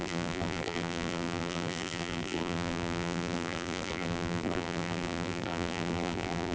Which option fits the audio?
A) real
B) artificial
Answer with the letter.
B